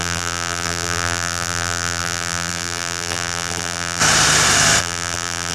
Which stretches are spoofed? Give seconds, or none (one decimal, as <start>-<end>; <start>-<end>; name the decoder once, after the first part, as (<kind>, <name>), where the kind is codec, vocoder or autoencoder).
0.0-4.0 (vocoder, BigVGAN v2); 4.8-5.5